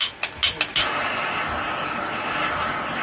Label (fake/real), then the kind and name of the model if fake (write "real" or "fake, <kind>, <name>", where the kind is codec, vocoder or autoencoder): real